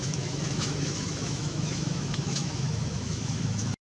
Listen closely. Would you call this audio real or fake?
fake